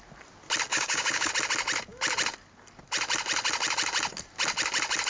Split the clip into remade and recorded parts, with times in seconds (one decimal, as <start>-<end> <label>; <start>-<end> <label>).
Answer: 0.0-0.7 recorded; 0.7-1.3 remade; 1.3-5.1 recorded